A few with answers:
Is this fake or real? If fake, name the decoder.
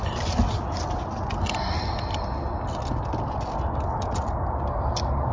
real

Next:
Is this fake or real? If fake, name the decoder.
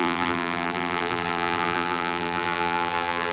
fake, vocoder, BigVGAN v2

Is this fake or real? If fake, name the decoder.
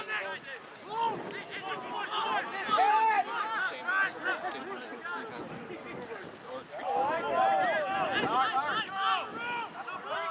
real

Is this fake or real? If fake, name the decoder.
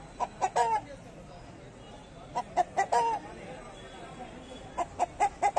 real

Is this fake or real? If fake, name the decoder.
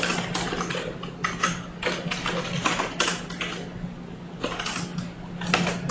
real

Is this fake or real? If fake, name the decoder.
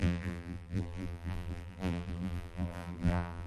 fake, vocoder, BigVGAN v2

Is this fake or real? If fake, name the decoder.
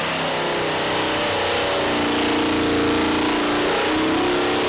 real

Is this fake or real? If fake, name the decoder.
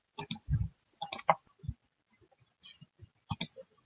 real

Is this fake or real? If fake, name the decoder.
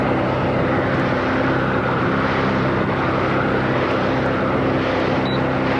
real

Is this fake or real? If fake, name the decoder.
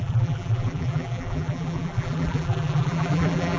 fake, vocoder, BigVGAN v2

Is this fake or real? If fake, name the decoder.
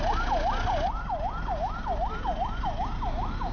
real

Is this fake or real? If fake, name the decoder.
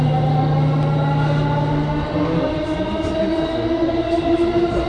real